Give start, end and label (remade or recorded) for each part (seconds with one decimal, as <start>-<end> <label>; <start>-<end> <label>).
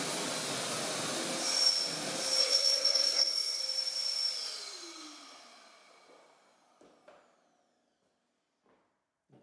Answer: 0.0-2.4 recorded; 2.4-3.6 remade; 3.6-9.4 recorded